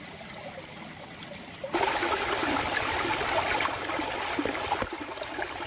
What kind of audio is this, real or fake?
real